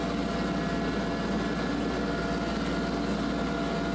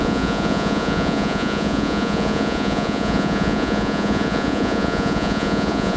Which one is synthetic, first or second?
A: second